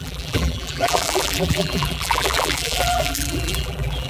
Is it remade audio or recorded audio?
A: remade